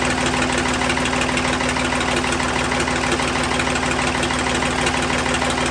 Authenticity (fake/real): real